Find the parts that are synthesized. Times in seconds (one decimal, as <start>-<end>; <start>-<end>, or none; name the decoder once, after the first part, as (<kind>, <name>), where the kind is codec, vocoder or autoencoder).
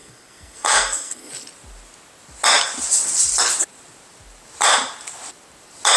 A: 0.0-1.3 (codec, SNAC)